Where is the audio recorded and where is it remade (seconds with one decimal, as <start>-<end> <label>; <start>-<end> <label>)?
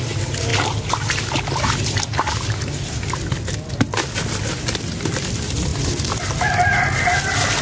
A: 0.0-7.6 recorded